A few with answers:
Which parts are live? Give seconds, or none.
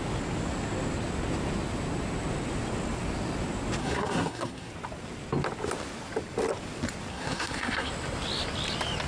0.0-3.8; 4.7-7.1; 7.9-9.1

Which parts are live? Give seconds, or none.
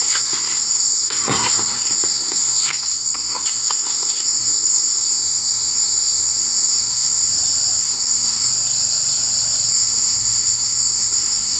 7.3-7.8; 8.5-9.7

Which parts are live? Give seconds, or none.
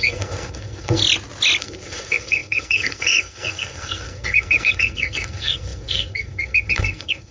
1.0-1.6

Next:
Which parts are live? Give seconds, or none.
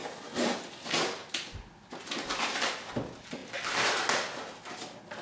0.0-5.2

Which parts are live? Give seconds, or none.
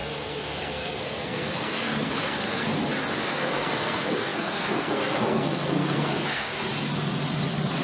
2.7-3.3; 6.5-7.8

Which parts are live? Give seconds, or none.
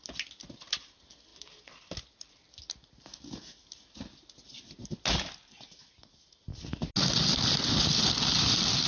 0.0-8.9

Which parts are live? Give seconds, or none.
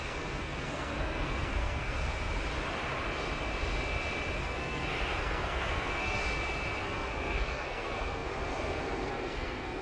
2.1-4.4; 6.2-6.8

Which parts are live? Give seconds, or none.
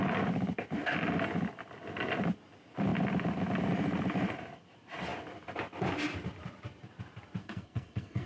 0.0-7.4